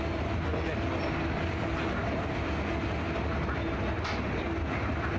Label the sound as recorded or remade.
recorded